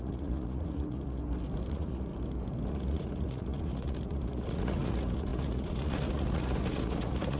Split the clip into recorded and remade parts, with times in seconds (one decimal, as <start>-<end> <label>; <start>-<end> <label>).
0.0-1.2 remade; 1.2-1.7 recorded; 1.7-2.1 remade; 2.1-2.7 recorded; 2.7-7.4 remade